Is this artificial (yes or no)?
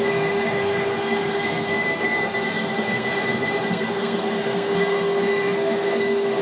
yes